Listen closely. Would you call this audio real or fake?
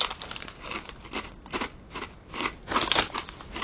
fake